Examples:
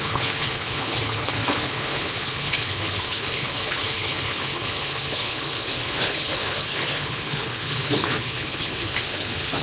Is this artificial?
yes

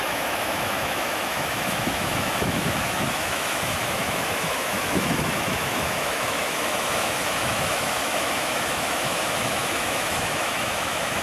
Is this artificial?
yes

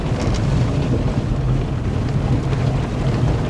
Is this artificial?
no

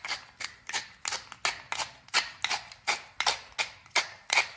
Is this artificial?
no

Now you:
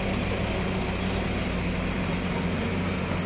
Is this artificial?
no